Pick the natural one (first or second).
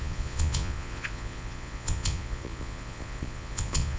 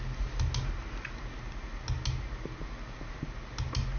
second